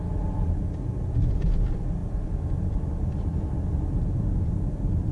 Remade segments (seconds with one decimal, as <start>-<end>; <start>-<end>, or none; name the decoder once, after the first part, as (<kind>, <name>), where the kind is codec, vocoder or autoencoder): none